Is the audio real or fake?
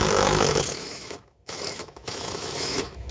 fake